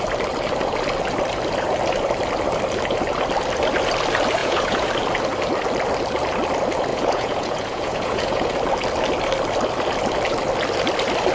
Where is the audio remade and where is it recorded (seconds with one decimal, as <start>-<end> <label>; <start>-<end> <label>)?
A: 0.0-4.4 recorded; 4.4-4.9 remade; 4.9-6.9 recorded; 6.9-8.5 remade; 8.5-11.3 recorded